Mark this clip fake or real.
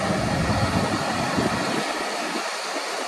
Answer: real